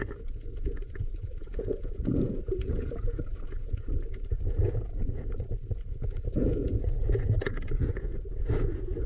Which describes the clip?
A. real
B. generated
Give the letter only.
B